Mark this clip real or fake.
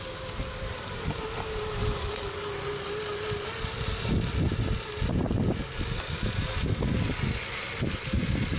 real